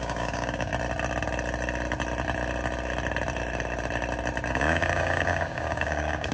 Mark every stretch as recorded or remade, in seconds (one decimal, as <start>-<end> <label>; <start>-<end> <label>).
0.0-0.7 remade; 0.7-4.5 recorded; 4.5-6.3 remade